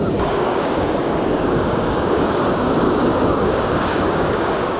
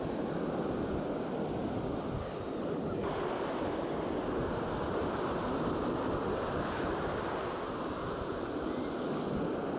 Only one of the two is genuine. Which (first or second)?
second